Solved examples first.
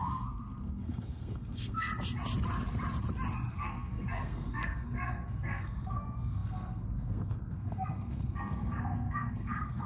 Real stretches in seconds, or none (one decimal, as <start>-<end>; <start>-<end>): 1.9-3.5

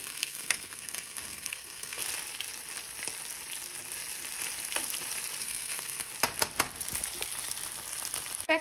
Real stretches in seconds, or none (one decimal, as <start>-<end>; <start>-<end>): 2.0-5.4; 6.1-8.6

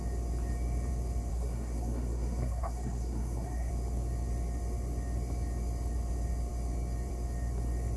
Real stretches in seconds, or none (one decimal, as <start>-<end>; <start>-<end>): 0.0-1.3; 3.7-8.0

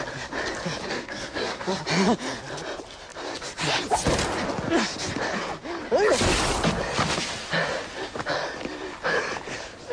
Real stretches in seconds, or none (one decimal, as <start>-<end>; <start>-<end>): 0.0-0.9; 1.8-9.9